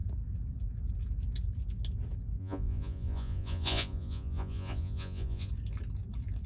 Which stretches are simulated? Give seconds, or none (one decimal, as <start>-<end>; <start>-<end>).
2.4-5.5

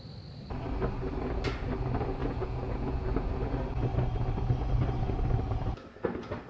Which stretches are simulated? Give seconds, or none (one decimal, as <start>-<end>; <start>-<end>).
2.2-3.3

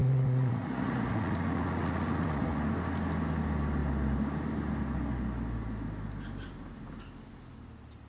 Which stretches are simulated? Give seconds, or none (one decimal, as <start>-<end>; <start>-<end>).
0.0-2.7